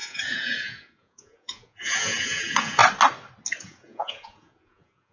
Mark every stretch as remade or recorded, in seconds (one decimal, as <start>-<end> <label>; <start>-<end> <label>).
0.0-2.8 remade; 2.8-3.6 recorded; 3.6-5.1 remade